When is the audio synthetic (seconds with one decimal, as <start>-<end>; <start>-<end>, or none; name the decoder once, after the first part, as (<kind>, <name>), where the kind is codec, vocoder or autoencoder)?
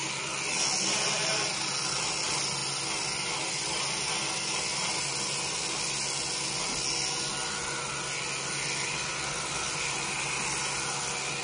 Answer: none